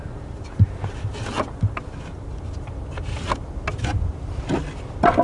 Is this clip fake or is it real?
real